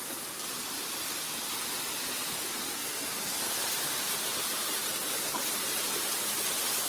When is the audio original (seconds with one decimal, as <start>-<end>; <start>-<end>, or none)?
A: 0.0-2.8; 3.4-6.9